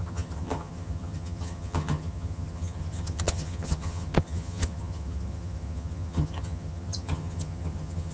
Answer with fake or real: fake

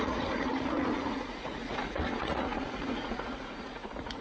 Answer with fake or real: fake